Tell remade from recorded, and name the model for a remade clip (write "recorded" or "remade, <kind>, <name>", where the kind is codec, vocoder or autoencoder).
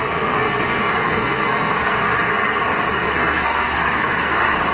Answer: remade, codec, SNAC